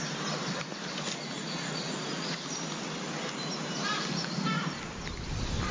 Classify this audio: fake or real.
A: real